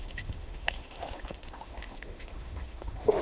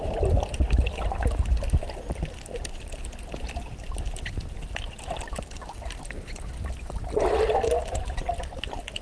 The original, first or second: second